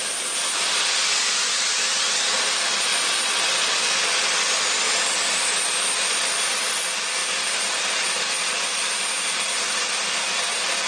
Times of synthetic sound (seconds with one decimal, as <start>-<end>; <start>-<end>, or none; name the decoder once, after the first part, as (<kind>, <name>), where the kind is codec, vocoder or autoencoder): none

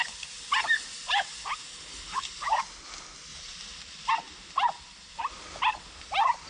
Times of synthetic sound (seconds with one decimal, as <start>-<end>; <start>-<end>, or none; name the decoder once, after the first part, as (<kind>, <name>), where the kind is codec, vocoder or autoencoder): 1.7-2.3 (codec, HILCodec)

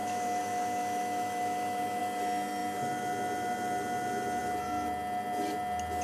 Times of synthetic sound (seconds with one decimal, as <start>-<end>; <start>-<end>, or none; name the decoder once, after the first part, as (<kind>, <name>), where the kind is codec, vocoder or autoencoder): 0.0-2.0 (autoencoder, DAC-VAE)

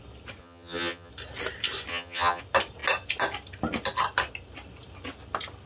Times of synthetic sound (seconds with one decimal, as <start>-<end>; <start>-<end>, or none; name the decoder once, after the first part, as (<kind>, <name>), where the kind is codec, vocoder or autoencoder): 0.4-1.1 (vocoder, HiFi-GAN); 1.9-2.4